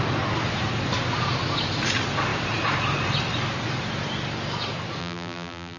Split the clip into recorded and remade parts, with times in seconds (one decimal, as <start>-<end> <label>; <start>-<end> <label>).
0.0-5.0 recorded; 5.0-5.8 remade